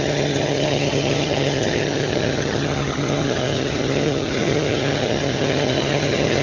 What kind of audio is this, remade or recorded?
remade